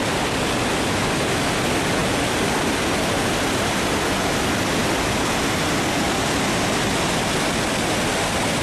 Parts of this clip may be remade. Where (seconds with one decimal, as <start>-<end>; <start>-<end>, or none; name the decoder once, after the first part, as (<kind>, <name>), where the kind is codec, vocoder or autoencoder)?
2.0-2.8 (vocoder, BigVGAN v2)